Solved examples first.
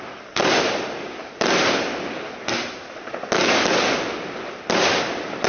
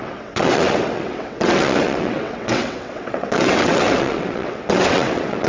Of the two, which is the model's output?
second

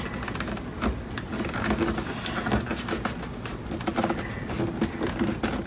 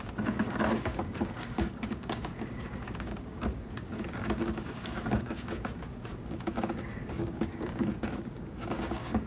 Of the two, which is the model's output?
second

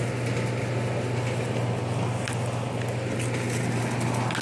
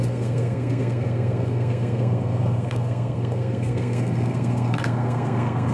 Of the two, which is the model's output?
second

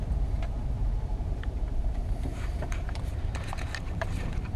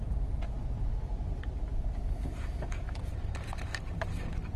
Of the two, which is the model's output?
first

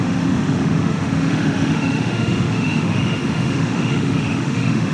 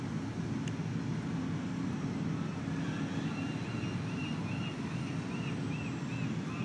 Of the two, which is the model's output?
first